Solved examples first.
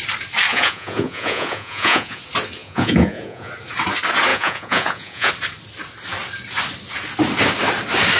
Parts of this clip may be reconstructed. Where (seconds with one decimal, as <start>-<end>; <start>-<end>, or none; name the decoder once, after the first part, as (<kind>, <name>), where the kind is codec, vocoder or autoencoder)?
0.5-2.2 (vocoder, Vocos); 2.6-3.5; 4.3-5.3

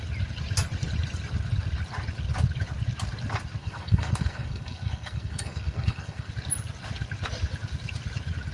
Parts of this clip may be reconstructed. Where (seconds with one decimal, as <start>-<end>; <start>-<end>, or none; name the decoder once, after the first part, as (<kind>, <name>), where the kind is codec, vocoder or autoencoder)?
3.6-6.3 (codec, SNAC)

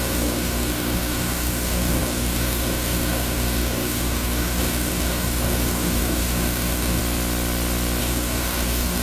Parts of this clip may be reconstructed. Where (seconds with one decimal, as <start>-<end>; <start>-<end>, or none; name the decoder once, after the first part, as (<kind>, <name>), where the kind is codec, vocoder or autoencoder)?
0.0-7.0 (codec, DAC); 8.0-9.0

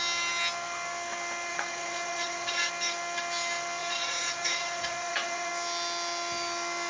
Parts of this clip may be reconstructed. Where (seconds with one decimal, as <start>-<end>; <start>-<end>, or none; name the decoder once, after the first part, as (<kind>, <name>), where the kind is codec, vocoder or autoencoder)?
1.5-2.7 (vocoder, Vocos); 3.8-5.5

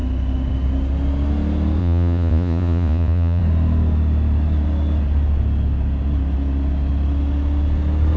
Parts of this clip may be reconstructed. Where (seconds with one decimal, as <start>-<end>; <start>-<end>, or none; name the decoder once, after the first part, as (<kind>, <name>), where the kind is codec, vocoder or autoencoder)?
1.8-3.4 (vocoder, Vocos)

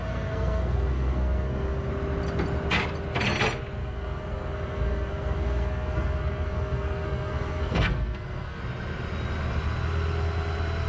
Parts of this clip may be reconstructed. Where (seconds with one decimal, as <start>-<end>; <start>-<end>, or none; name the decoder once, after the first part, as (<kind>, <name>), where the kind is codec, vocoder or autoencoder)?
0.0-1.9 (codec, SNAC); 3.8-8.6

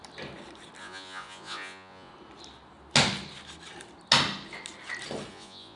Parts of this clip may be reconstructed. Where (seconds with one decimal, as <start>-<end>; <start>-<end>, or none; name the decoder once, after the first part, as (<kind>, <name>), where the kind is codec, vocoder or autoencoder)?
0.8-2.1 (vocoder, Vocos); 5.3-5.8